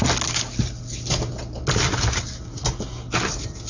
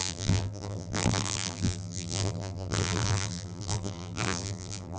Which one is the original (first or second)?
first